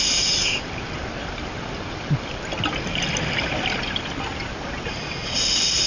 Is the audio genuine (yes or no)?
yes